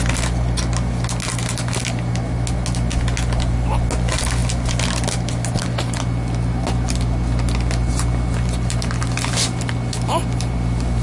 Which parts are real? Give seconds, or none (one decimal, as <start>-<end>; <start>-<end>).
0.0-11.0